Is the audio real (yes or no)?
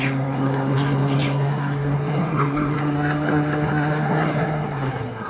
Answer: no